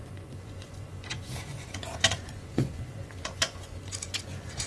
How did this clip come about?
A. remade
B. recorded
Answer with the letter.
A